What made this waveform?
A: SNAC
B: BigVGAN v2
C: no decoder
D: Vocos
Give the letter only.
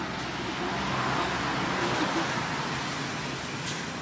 C